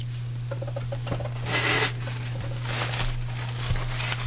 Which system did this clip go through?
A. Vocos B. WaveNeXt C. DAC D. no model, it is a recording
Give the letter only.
D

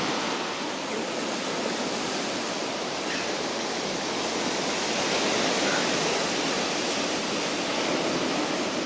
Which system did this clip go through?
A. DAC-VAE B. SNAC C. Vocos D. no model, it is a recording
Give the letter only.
D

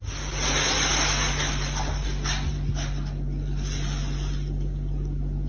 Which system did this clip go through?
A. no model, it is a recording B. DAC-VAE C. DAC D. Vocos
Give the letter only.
A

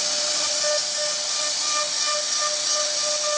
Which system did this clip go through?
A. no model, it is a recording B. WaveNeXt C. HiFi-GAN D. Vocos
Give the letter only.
A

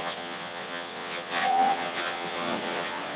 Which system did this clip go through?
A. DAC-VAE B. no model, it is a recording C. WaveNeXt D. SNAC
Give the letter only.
C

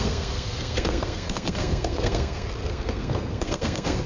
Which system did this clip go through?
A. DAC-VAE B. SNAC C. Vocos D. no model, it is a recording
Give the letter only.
B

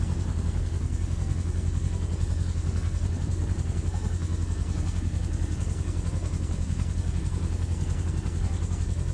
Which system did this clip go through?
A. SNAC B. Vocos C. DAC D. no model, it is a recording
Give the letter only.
A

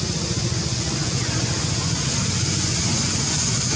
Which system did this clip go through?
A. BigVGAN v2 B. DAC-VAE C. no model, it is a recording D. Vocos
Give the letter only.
D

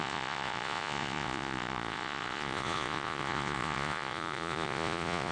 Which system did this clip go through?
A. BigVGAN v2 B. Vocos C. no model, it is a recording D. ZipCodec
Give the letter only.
B